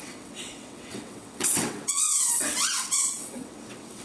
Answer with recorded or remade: remade